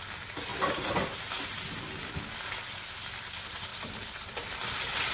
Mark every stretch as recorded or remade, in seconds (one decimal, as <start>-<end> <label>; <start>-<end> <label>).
0.0-5.1 recorded